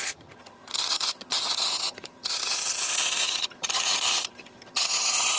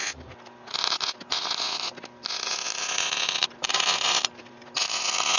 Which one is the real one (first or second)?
second